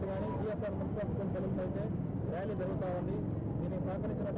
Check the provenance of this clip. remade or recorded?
recorded